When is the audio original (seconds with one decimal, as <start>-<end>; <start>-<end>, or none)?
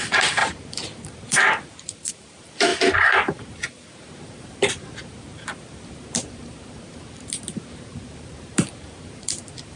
none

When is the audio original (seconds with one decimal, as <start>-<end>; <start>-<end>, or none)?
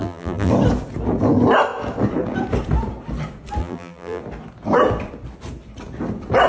0.5-3.6; 4.2-6.5